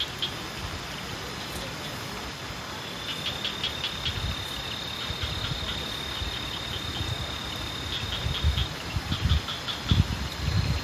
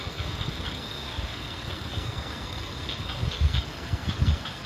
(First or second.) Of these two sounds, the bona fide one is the first